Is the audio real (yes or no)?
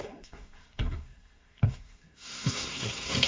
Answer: no